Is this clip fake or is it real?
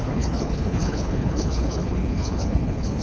fake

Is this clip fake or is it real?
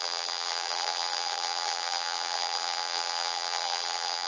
fake